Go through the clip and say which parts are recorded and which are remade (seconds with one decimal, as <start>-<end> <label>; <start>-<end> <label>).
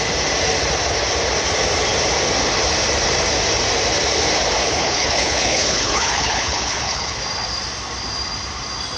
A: 0.0-4.6 recorded; 4.6-7.2 remade; 7.2-9.0 recorded